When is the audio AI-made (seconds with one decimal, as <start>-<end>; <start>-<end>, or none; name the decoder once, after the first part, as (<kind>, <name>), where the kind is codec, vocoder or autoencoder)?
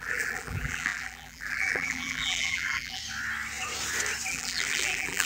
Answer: 0.0-3.0 (vocoder, BigVGAN v2); 4.3-5.3